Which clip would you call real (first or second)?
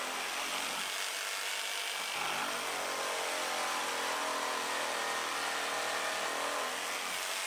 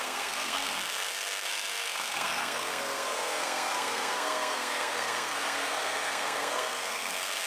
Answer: first